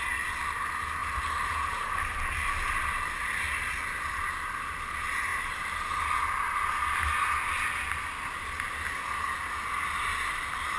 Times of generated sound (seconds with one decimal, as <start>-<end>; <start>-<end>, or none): 1.0-2.5; 5.3-6.0